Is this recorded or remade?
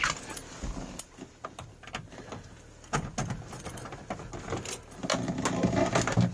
recorded